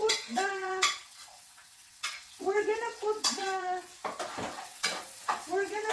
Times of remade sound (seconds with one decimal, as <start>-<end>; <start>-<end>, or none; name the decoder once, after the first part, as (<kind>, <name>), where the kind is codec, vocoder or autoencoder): 0.0-3.9 (vocoder, WaveNeXt); 4.5-5.9